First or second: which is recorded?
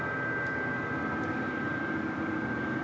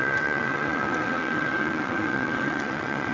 first